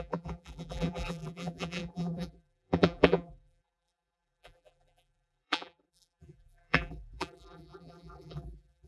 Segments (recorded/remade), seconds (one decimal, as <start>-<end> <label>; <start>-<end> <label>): 0.0-8.9 remade